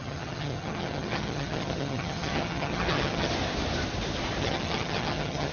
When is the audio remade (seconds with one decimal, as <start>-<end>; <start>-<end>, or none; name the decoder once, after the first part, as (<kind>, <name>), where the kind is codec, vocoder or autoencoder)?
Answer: 0.0-3.3 (vocoder, HiFi-GAN); 4.4-5.5